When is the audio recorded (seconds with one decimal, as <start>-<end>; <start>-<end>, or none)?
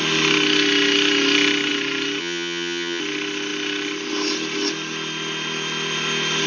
0.0-2.2; 3.0-6.5